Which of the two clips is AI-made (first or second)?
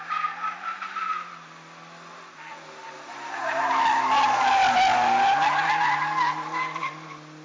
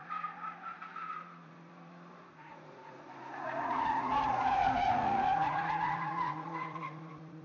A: second